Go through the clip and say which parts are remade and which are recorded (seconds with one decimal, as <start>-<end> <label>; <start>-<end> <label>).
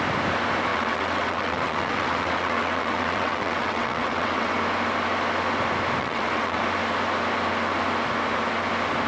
0.0-0.7 recorded; 0.7-4.5 remade; 4.5-6.0 recorded; 6.0-6.6 remade; 6.6-9.1 recorded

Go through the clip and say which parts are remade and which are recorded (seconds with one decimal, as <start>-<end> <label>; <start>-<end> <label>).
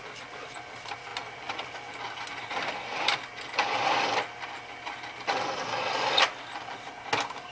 0.0-7.5 recorded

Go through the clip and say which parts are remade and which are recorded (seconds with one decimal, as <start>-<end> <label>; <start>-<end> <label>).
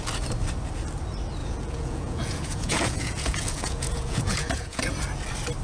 0.0-1.4 recorded; 1.4-4.8 remade; 4.8-5.6 recorded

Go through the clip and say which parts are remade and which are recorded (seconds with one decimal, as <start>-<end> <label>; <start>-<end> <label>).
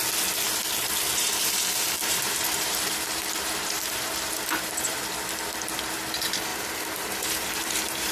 0.0-2.0 recorded; 2.0-5.0 remade; 5.0-6.5 recorded; 6.5-8.1 remade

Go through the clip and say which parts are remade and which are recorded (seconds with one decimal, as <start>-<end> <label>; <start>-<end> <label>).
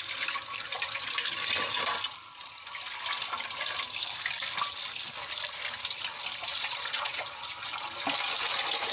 0.0-6.5 recorded; 6.5-7.2 remade; 7.2-8.9 recorded